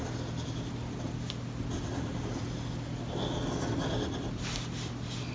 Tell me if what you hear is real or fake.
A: real